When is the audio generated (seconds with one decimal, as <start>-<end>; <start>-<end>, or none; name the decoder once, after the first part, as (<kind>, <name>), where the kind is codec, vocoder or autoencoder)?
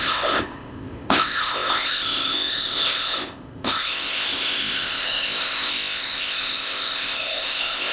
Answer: 0.0-7.9 (codec, ZipCodec)